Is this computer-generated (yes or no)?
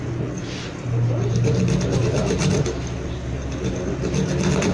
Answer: no